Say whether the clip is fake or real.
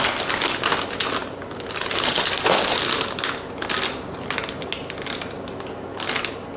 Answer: real